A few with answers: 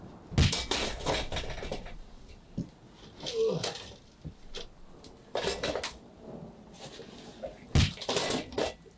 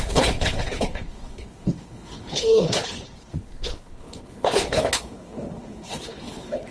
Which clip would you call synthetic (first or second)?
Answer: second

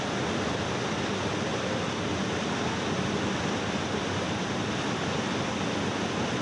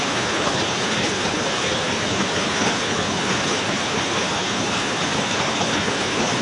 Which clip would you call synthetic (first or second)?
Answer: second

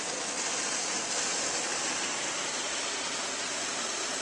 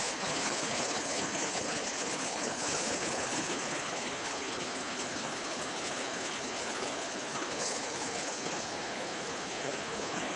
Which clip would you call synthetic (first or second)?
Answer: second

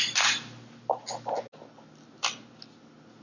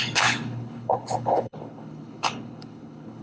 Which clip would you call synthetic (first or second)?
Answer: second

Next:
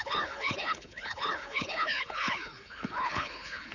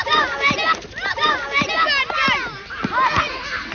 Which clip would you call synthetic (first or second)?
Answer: first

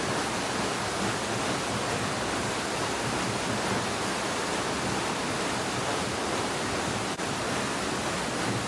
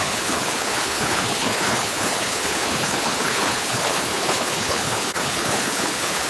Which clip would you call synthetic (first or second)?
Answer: second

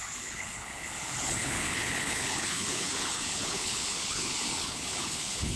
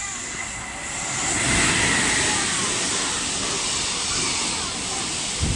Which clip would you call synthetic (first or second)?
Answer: first